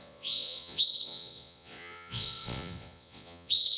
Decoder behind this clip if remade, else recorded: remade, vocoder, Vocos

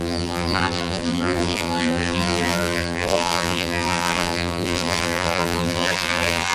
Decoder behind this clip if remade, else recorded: remade, vocoder, BigVGAN v2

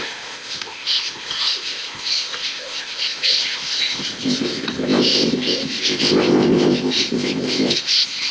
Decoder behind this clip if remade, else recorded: remade, codec, ZipCodec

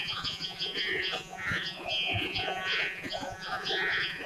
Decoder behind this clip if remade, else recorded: remade, vocoder, Vocos